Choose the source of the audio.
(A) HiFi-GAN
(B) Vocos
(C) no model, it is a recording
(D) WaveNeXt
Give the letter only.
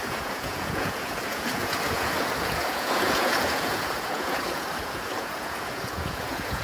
B